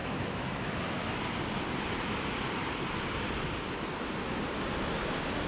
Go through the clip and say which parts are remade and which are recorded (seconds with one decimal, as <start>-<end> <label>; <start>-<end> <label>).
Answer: 0.0-1.2 remade; 1.2-5.5 recorded

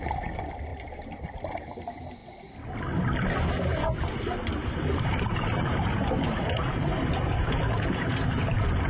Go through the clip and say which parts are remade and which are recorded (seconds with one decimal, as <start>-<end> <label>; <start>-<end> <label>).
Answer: 0.0-2.2 remade; 2.2-4.0 recorded; 4.0-8.9 remade

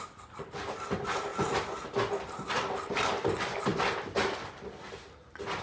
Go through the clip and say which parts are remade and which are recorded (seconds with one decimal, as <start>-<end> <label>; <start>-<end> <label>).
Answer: 0.0-5.6 recorded

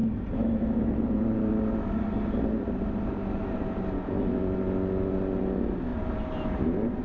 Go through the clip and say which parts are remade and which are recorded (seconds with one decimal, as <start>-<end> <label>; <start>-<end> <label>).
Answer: 0.0-1.5 remade; 1.5-5.9 recorded; 5.9-7.0 remade

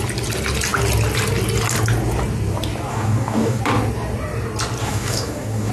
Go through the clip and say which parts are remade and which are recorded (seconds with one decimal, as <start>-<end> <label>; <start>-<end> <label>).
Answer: 0.0-2.9 recorded; 2.9-3.6 remade; 3.6-4.8 recorded; 4.8-5.7 remade

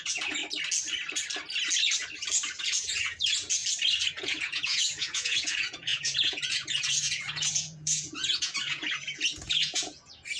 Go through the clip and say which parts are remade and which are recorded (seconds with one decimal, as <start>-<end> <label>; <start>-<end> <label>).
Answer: 0.0-0.4 remade; 0.4-2.6 recorded; 2.6-3.6 remade; 3.6-4.1 recorded; 4.1-10.4 remade

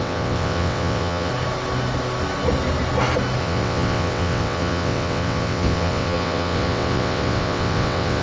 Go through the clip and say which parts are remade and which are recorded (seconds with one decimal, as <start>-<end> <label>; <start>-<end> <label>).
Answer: 0.0-1.3 remade; 1.3-3.4 recorded; 3.4-8.2 remade